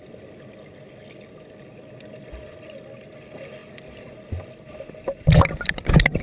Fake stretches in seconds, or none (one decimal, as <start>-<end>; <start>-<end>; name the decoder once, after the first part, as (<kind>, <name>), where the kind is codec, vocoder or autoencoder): none